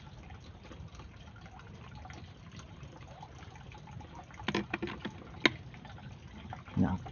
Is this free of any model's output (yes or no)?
yes